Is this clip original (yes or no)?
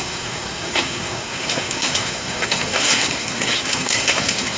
no